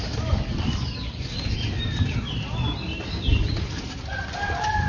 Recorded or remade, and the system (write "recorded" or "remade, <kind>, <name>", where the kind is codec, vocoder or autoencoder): remade, vocoder, BigVGAN v2